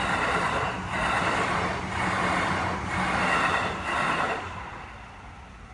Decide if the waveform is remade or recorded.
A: recorded